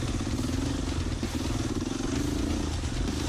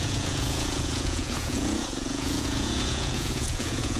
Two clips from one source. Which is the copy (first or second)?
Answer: second